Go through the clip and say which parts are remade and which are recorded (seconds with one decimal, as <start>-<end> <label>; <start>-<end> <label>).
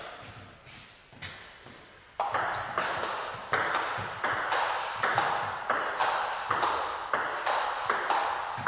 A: 0.0-8.7 recorded